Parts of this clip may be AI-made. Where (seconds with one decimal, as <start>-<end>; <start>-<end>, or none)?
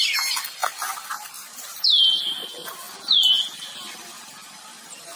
none